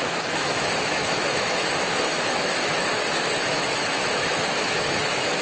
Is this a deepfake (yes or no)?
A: yes